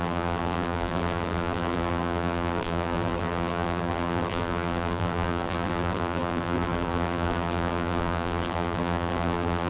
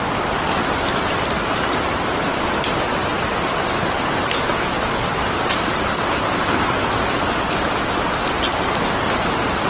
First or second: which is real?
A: second